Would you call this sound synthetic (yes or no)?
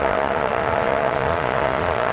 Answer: yes